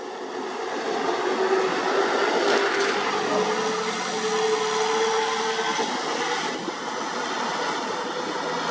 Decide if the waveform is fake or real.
real